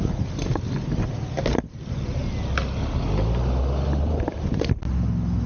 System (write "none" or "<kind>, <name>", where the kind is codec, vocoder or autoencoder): none